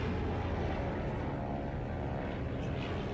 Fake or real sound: real